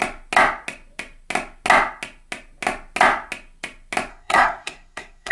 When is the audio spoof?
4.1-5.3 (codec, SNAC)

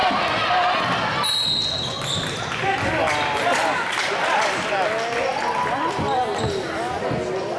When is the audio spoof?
none

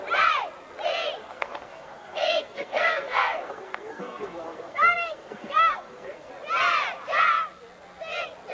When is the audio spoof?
1.2-6.3 (codec, SNAC)

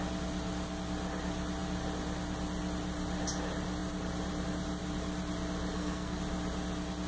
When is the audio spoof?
5.7-6.2 (codec, SNAC)

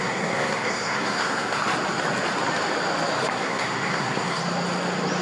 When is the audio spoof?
0.0-1.6 (codec, SNAC); 3.3-4.4

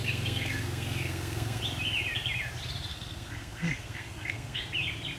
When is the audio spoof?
0.0-1.6 (codec, SNAC); 2.9-4.6

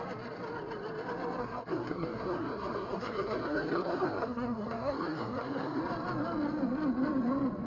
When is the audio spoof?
1.4-5.8 (codec, SNAC)